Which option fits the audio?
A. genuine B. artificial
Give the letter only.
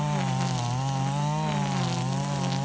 A